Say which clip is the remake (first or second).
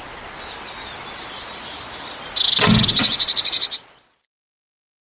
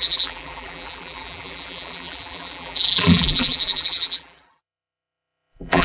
second